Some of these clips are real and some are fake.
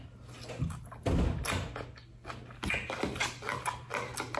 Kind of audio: real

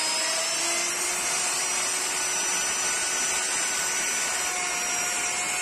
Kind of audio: real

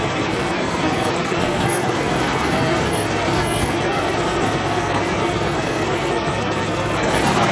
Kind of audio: fake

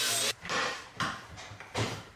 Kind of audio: fake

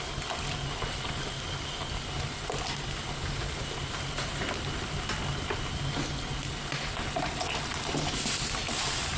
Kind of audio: real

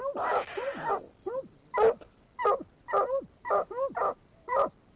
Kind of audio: real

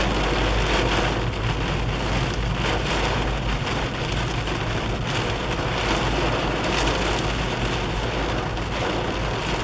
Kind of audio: real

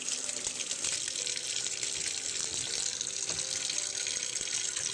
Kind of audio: real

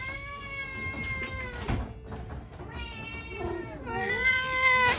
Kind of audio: real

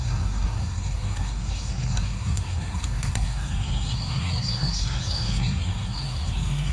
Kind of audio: fake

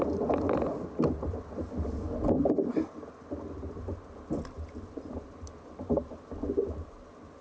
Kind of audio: real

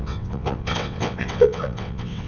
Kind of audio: fake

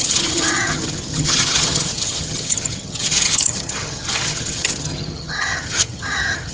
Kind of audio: fake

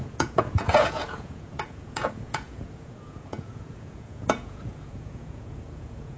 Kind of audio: fake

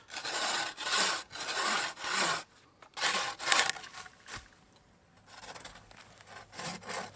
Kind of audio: real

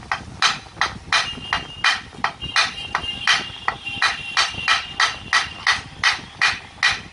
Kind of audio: real